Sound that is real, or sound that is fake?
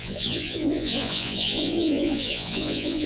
fake